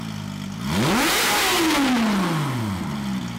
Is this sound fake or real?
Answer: real